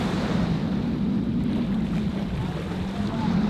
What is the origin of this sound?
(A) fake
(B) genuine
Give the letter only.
B